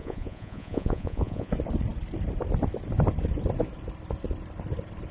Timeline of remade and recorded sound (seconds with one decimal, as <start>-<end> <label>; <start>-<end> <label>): 0.0-1.5 remade; 1.5-5.1 recorded